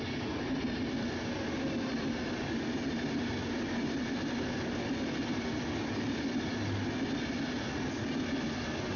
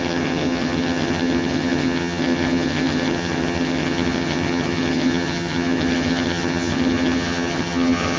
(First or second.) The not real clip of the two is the second